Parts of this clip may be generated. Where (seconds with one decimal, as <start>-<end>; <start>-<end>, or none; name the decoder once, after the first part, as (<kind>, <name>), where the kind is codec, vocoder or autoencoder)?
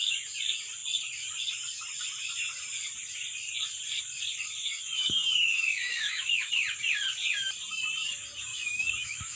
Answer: 4.6-6.5 (autoencoder, DAC-VAE); 8.5-9.4